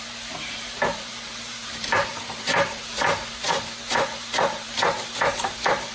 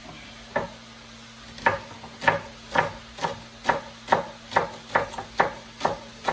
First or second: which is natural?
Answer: second